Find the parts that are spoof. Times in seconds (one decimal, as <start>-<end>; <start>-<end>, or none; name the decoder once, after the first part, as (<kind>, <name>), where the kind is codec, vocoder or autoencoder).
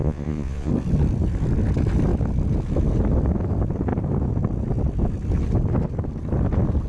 0.0-0.7 (vocoder, Vocos)